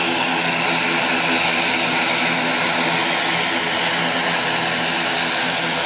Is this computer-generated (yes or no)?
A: no